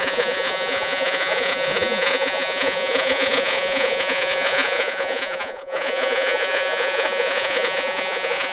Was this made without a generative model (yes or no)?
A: no